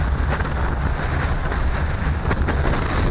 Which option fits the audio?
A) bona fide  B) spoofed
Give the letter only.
A